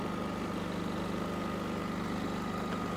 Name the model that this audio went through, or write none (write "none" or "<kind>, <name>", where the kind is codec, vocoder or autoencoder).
none